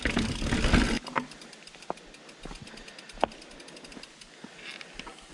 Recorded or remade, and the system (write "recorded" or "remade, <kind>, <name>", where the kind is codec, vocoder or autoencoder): recorded